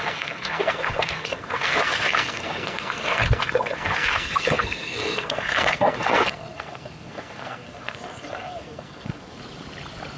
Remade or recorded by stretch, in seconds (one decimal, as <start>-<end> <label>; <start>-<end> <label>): 0.0-9.4 remade; 9.4-10.2 recorded